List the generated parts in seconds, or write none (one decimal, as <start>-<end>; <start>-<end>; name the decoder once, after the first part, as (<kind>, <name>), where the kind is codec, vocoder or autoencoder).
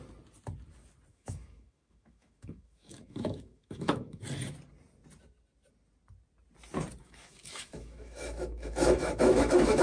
1.1-4.2 (autoencoder, DAC-VAE); 7.0-9.8